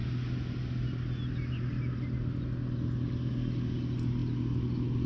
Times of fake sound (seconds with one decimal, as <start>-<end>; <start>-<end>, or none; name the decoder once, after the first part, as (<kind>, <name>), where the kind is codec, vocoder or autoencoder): none